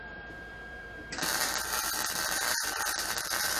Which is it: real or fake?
fake